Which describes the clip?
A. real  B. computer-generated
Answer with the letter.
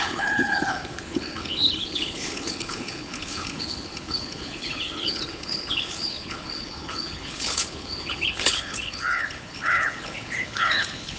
B